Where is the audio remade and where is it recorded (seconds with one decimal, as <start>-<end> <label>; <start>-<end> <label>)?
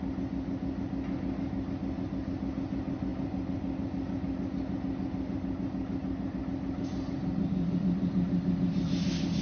0.0-9.4 recorded